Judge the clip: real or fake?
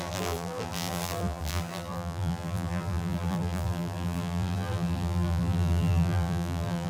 fake